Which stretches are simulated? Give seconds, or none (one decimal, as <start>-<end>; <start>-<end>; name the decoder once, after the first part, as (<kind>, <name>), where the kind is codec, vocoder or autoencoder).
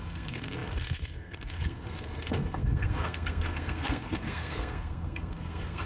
0.0-5.9 (codec, SNAC)